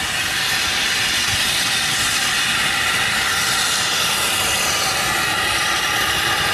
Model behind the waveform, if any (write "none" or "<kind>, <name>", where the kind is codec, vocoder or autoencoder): none